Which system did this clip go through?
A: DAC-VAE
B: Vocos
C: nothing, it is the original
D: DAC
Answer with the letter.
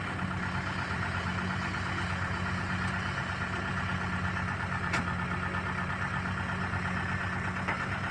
C